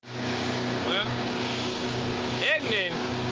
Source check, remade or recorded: remade